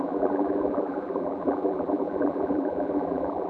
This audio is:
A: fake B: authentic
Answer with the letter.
A